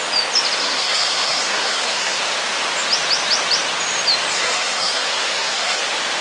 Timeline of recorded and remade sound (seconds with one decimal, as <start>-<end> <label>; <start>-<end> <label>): 0.0-0.6 recorded; 0.6-2.2 remade; 2.2-4.3 recorded; 4.3-5.8 remade; 5.8-6.2 recorded